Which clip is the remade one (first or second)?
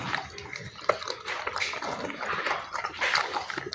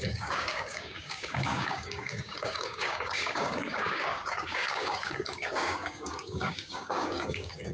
second